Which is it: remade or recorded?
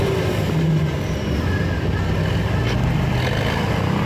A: recorded